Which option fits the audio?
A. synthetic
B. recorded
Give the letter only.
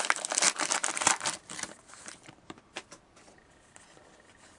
A